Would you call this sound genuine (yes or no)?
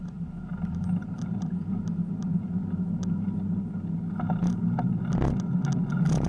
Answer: yes